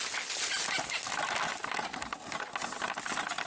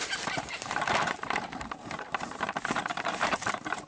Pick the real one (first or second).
first